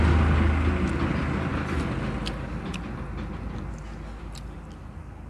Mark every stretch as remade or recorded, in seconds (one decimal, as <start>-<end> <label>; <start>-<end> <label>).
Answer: 0.0-5.3 recorded